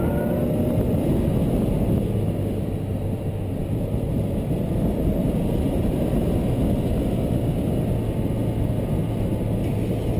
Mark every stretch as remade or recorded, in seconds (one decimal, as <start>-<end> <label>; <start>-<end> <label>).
0.0-5.2 recorded; 5.2-6.0 remade; 6.0-10.2 recorded